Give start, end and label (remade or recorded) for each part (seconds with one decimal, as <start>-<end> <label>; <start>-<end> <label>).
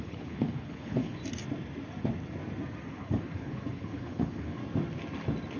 0.0-1.2 remade; 1.2-2.9 recorded; 2.9-4.6 remade; 4.6-5.6 recorded